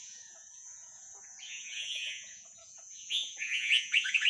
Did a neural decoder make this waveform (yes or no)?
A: yes